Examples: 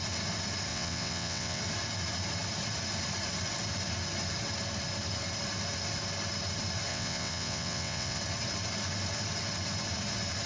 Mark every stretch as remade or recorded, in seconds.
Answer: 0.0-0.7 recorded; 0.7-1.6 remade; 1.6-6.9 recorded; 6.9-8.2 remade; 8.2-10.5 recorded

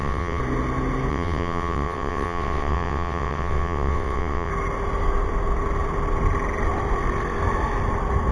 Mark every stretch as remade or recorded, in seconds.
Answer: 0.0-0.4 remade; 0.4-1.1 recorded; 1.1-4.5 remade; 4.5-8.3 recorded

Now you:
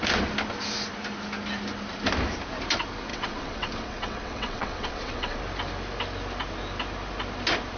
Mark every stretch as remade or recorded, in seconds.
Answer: 0.0-3.1 recorded; 3.1-5.4 remade; 5.4-7.8 recorded

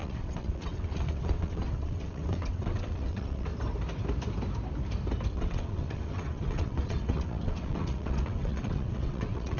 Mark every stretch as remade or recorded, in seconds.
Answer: 0.0-3.5 remade; 3.5-5.3 recorded; 5.3-9.6 remade